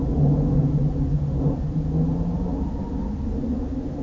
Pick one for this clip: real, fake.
real